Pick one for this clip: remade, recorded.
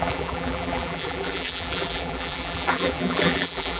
remade